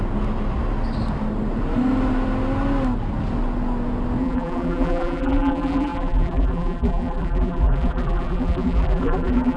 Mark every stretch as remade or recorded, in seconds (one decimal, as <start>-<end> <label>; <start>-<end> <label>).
0.0-4.2 recorded; 4.2-9.6 remade